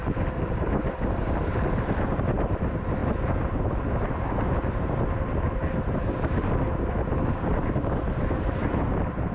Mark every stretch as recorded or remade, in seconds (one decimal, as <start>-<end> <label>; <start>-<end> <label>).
0.0-0.9 recorded; 0.9-3.0 remade; 3.0-6.8 recorded; 6.8-9.3 remade